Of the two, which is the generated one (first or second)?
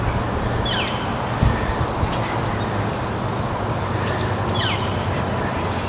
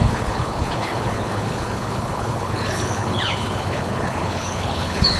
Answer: second